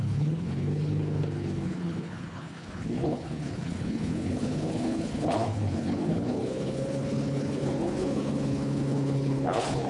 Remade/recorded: remade